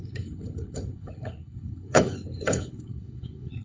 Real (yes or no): no